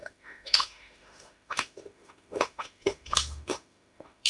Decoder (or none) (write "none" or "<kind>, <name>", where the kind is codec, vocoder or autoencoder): autoencoder, DAC-VAE